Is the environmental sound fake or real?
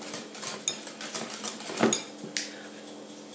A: real